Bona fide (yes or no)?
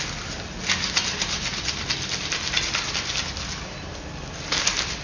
yes